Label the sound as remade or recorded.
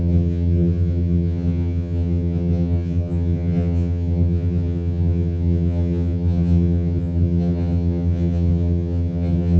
remade